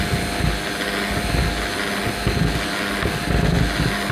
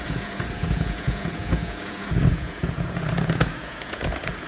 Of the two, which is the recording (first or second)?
first